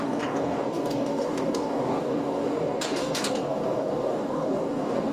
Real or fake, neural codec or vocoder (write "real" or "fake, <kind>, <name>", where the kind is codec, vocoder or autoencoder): fake, codec, DAC